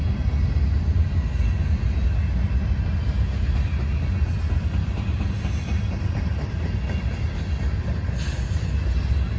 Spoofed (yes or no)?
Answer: no